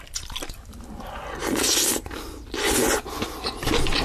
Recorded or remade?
recorded